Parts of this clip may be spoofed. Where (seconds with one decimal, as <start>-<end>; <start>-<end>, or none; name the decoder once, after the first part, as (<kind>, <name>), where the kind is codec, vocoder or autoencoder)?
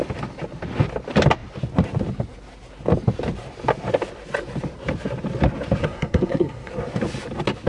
5.8-6.7 (codec, SNAC)